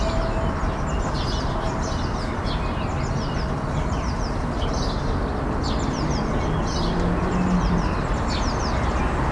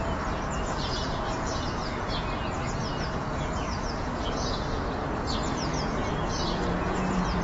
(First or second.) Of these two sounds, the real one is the first